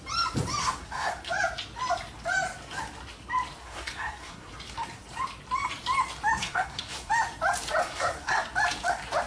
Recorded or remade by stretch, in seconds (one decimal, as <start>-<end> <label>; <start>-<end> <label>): 0.0-0.6 recorded; 0.6-1.3 remade; 1.3-3.6 recorded; 3.6-4.5 remade; 4.5-6.4 recorded; 6.4-7.1 remade; 7.1-7.8 recorded; 7.8-8.4 remade; 8.4-9.3 recorded